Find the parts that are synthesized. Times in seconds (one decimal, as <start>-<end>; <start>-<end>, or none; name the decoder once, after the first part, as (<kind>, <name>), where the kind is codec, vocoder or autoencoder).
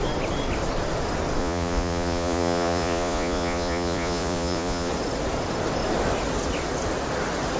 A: 1.4-4.9 (vocoder, Vocos)